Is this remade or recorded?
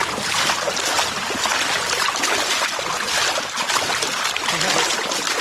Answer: recorded